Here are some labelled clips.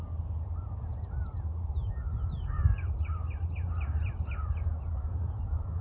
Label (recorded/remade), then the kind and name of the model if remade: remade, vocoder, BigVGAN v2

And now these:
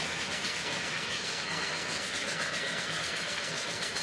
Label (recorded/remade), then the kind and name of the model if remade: remade, codec, SNAC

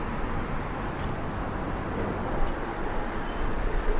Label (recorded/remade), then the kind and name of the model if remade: recorded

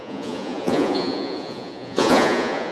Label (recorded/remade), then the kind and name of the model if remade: remade, vocoder, Vocos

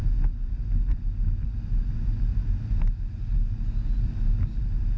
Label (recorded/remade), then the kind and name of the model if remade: recorded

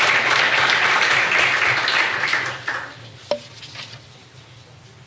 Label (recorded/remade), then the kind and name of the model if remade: recorded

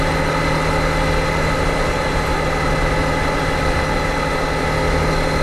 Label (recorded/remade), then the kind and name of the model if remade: recorded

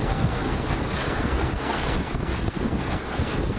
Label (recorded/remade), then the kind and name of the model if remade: remade, codec, SNAC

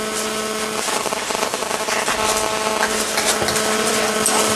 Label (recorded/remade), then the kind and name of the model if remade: recorded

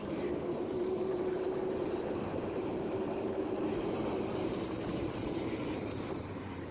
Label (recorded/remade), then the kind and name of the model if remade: remade, vocoder, BigVGAN v2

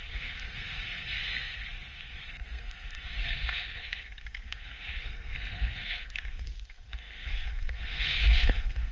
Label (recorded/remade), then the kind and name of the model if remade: remade, codec, SNAC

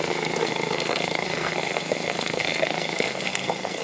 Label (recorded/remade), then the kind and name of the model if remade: remade, codec, SNAC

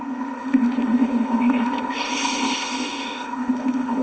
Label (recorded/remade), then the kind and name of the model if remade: remade, codec, ZipCodec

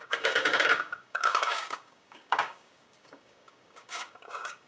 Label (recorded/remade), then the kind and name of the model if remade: remade, codec, DAC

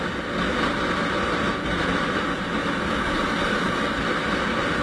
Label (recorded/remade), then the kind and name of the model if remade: recorded